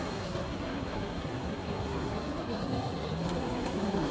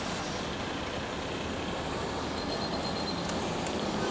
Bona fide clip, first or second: second